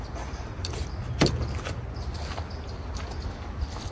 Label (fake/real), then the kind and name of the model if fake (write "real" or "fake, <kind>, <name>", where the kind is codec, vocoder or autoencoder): real